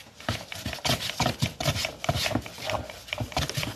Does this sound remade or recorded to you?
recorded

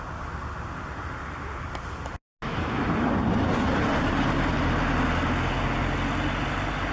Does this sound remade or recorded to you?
recorded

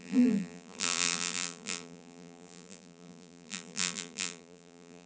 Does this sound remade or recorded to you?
remade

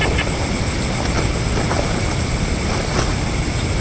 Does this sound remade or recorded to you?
recorded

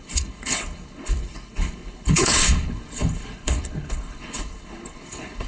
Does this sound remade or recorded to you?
remade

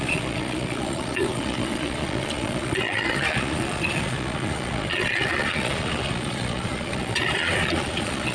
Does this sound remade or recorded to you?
remade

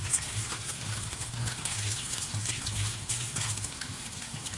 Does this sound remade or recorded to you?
remade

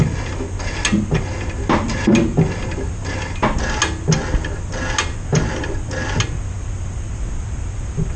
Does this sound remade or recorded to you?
recorded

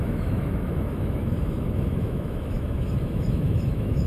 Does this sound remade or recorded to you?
remade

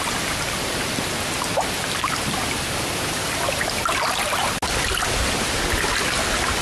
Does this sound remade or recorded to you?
recorded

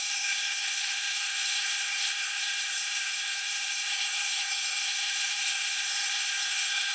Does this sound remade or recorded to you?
remade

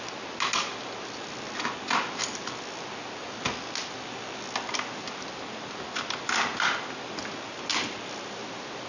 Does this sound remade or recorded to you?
recorded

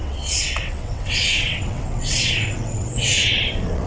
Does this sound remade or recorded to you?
remade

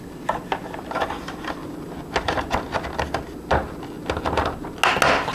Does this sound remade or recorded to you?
recorded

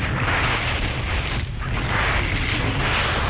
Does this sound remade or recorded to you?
recorded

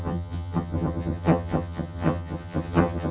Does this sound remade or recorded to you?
remade